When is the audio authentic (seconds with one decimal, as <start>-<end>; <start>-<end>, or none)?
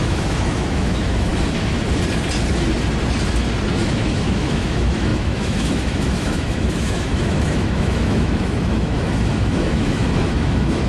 1.3-3.9